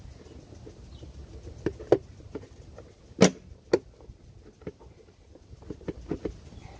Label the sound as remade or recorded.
recorded